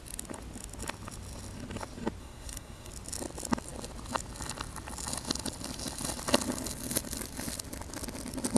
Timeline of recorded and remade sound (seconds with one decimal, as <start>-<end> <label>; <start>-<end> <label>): 0.0-2.2 recorded; 2.2-2.9 remade; 2.9-8.6 recorded